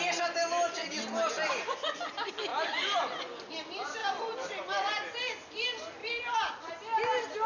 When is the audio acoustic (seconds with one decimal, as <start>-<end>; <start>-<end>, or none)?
0.0-2.5; 3.2-4.0; 5.1-6.0; 6.7-7.5